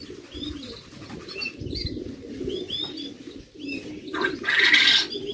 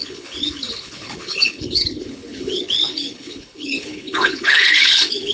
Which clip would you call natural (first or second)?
first